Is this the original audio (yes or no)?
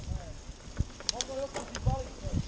yes